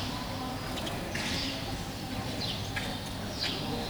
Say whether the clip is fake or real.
real